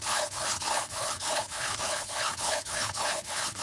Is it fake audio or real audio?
fake